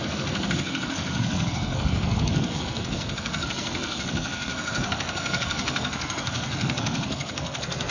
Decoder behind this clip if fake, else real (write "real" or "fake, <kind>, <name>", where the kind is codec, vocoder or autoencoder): fake, codec, SNAC